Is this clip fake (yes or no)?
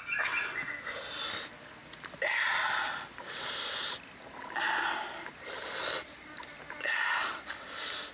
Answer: no